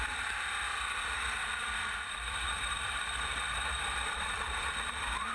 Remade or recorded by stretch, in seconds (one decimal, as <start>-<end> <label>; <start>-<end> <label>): 0.0-1.4 recorded; 1.4-4.6 remade; 4.6-5.3 recorded